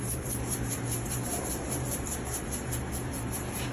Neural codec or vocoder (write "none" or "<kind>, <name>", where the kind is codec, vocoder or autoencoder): vocoder, BigVGAN v2